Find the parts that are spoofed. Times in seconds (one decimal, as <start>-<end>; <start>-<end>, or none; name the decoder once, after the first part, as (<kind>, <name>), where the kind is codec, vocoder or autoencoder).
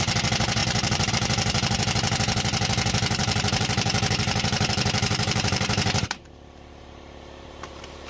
0.6-1.1 (vocoder, BigVGAN v2); 3.2-8.1